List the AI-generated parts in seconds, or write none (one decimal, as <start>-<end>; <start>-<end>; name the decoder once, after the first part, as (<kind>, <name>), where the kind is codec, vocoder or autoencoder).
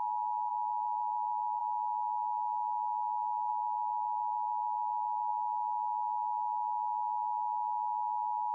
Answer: 0.5-1.6 (autoencoder, DAC-VAE); 3.5-5.3